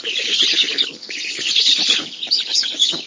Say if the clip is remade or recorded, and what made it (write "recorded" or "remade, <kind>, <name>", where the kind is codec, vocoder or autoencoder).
remade, codec, HILCodec